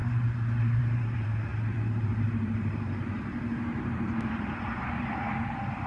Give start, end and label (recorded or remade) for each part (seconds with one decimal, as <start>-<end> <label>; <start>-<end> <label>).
0.0-0.6 recorded; 0.6-5.9 remade